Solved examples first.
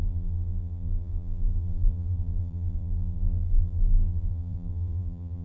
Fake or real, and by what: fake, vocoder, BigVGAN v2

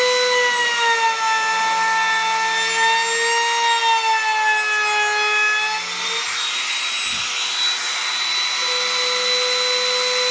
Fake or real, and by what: real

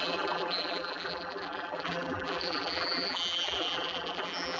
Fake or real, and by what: fake, vocoder, BigVGAN v2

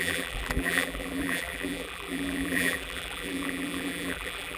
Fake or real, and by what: fake, vocoder, BigVGAN v2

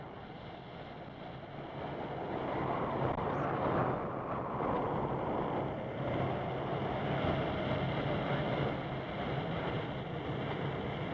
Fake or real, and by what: real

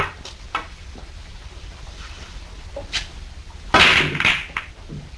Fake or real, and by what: real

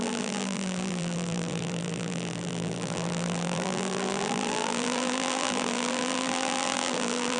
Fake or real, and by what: fake, vocoder, BigVGAN v2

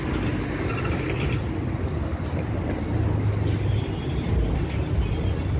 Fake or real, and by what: real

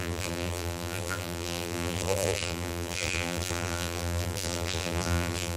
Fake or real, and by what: fake, vocoder, BigVGAN v2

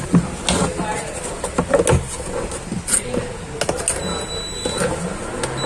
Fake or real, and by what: real